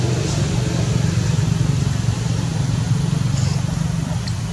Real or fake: real